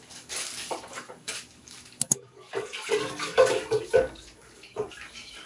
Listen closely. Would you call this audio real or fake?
fake